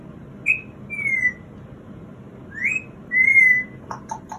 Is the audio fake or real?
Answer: real